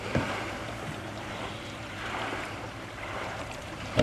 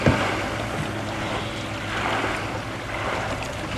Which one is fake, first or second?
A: first